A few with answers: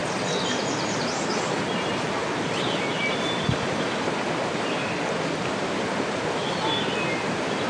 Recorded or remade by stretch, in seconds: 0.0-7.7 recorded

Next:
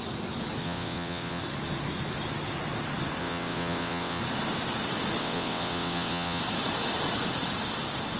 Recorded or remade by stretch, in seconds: 0.0-0.6 recorded; 0.6-1.4 remade; 1.4-3.2 recorded; 3.2-4.2 remade; 4.2-5.2 recorded; 5.2-6.4 remade; 6.4-8.2 recorded

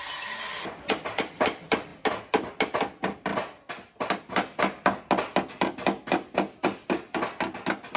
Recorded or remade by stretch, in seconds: 0.0-8.0 recorded

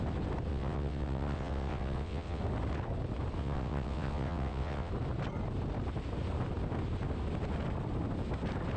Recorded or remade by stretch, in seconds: 0.0-0.5 recorded; 0.5-2.4 remade; 2.4-3.4 recorded; 3.4-4.9 remade; 4.9-8.8 recorded

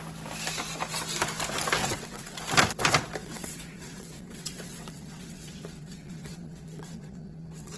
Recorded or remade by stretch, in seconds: 0.0-1.8 recorded; 1.8-2.4 remade; 2.4-3.2 recorded; 3.2-7.8 remade

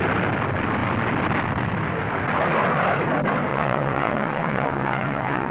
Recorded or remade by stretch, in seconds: 0.0-3.5 recorded; 3.5-5.5 remade

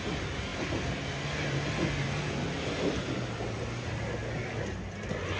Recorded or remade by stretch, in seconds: 0.0-5.4 recorded